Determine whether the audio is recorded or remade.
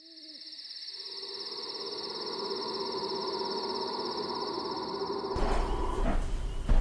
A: recorded